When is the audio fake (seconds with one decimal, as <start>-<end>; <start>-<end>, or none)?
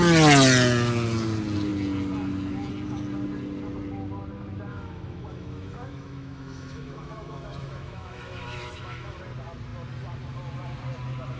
4.7-9.2